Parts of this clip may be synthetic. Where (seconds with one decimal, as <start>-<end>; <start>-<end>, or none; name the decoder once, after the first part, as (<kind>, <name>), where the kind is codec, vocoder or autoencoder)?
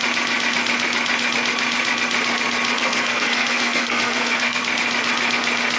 2.8-4.6 (codec, SNAC)